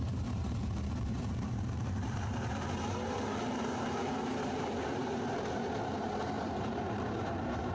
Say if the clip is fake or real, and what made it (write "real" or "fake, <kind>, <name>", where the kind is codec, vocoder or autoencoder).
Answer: fake, vocoder, BigVGAN v2